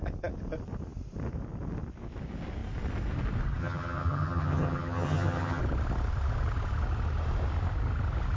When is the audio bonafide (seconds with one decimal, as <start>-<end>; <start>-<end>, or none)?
0.0-3.6; 5.6-8.4